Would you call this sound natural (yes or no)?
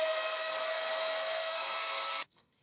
no